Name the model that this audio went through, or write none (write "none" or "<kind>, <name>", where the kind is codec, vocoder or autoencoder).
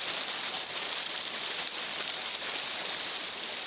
none